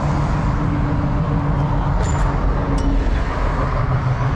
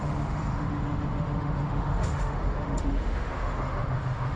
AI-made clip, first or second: second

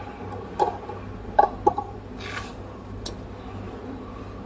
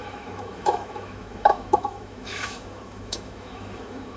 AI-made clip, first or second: second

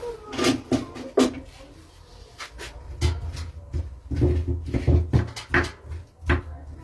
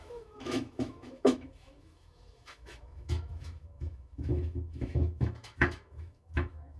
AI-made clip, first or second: second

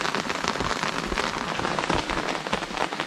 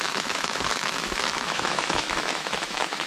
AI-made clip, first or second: second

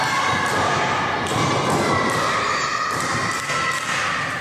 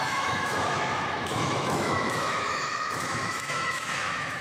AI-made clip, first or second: second